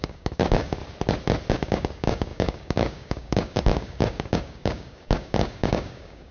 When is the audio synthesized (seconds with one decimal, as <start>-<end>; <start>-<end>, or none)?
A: 0.0-0.8; 1.5-6.3